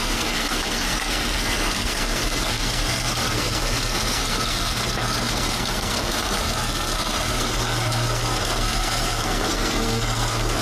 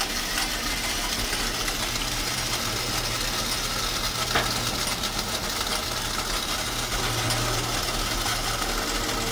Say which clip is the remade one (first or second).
first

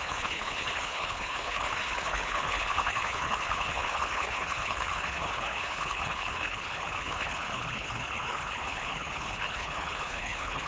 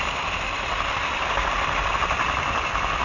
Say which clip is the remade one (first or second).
first